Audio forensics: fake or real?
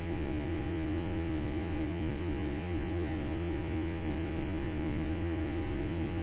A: fake